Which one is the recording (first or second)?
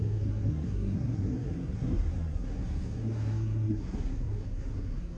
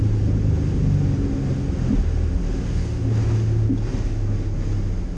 second